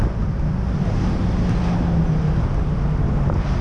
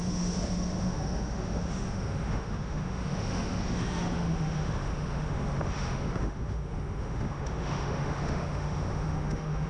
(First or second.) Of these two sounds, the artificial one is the second